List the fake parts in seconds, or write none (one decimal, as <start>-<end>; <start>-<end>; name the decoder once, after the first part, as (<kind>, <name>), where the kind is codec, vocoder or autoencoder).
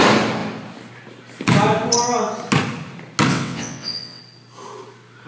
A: 3.3-4.2 (vocoder, WaveNeXt)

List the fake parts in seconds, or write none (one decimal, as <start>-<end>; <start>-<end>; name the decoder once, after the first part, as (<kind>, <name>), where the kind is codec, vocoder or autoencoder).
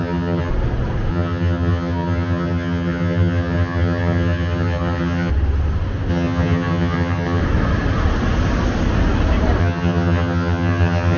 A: 0.0-0.5 (vocoder, HiFi-GAN); 1.1-5.3; 6.1-7.4; 9.6-11.2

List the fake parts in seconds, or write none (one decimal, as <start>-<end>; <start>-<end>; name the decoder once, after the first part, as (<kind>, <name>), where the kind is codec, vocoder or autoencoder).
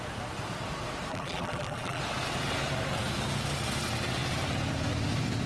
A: 1.1-2.0 (vocoder, BigVGAN v2)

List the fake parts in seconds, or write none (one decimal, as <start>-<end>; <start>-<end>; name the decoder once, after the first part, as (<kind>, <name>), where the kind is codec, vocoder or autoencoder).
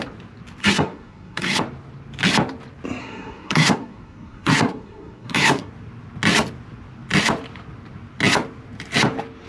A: 0.6-1.6 (codec, SNAC); 3.0-5.7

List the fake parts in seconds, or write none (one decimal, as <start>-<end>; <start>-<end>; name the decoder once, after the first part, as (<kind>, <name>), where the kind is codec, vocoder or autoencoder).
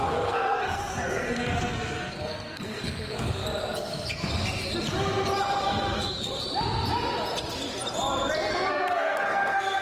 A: 0.0-3.4 (codec, SNAC); 5.6-6.3; 8.5-9.8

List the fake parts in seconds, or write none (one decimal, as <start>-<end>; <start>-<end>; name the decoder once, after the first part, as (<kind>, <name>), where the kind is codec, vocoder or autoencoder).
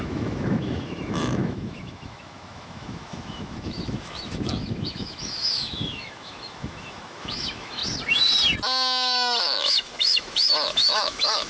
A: 0.0-7.8 (autoencoder, DAC-VAE); 9.4-11.5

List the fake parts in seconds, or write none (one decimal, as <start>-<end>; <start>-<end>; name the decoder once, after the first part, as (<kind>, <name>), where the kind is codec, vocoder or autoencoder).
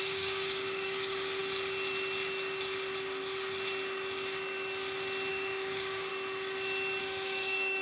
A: 0.0-1.4 (codec, DAC); 5.3-6.1; 7.0-7.8